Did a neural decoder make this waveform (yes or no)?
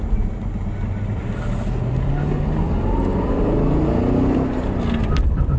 no